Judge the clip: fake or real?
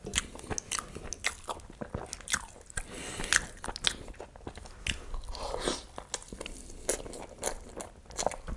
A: real